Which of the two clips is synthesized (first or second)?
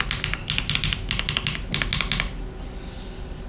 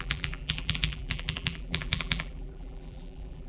second